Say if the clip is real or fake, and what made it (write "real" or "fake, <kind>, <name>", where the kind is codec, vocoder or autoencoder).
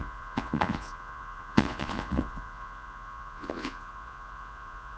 fake, vocoder, Vocos